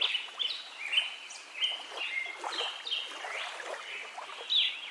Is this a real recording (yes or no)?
yes